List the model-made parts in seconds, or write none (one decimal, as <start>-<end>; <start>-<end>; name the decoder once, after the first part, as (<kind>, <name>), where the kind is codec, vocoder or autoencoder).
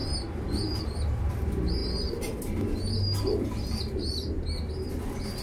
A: none